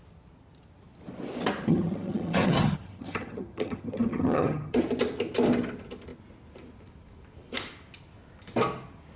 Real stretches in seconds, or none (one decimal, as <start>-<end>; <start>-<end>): 0.0-1.7; 4.8-9.2